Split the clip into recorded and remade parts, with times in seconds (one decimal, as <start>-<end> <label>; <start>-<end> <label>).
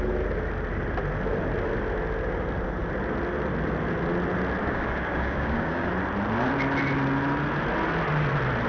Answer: 0.0-4.6 recorded; 4.6-5.9 remade; 5.9-8.7 recorded